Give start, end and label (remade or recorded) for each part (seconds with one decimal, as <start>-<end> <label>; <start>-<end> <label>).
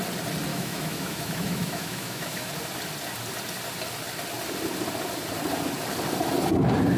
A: 0.0-0.5 recorded; 0.5-2.5 remade; 2.5-7.0 recorded